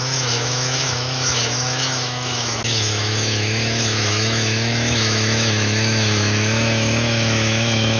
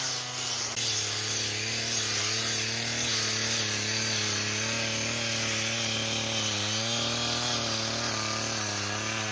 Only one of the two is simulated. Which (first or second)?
first